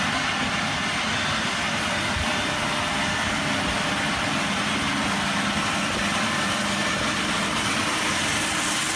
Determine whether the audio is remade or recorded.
recorded